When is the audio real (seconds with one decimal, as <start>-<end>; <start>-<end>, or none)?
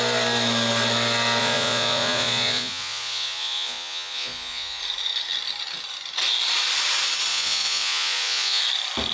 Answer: 0.0-1.4; 4.8-7.3; 8.6-9.1